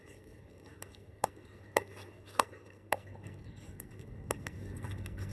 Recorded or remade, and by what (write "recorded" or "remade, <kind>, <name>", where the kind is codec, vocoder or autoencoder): remade, codec, SNAC